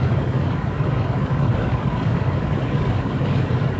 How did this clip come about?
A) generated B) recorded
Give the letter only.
A